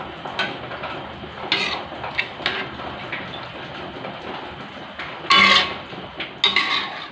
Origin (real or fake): real